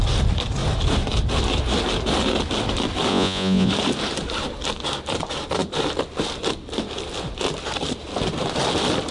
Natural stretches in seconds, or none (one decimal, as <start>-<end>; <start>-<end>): 0.0-3.1; 3.7-9.1